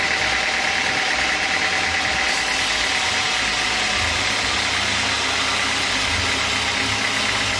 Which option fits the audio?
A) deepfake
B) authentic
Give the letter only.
B